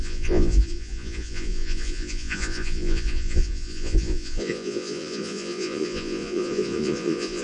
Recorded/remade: remade